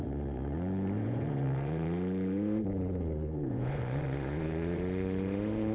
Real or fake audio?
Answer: fake